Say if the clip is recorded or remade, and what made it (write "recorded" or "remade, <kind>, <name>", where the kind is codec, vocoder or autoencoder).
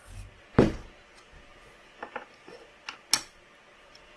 recorded